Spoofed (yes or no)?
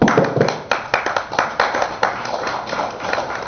no